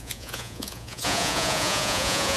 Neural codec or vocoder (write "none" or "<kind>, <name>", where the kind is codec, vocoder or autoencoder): vocoder, Vocos